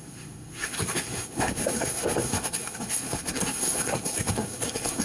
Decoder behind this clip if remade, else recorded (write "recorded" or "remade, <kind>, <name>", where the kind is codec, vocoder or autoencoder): remade, codec, SNAC